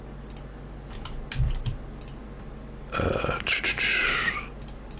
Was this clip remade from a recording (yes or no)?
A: no